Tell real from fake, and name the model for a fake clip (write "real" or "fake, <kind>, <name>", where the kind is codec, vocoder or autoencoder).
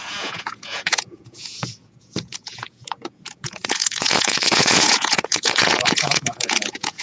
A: fake, vocoder, Vocos